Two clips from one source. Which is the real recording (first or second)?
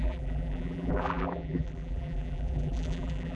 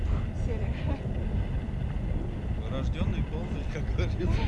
second